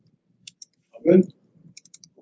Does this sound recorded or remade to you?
remade